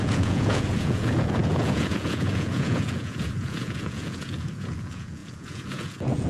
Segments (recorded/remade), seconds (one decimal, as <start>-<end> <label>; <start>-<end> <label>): 0.0-6.3 remade